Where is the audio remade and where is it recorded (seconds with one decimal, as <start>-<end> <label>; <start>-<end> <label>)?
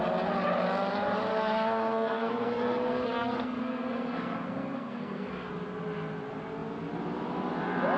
0.0-1.3 recorded; 1.3-5.5 remade; 5.5-8.0 recorded